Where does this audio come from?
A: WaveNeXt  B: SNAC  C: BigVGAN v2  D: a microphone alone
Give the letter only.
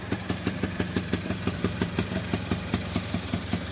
C